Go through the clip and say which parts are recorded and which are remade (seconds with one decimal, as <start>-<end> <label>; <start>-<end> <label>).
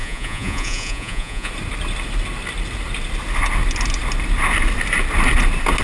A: 0.0-1.5 remade; 1.5-5.8 recorded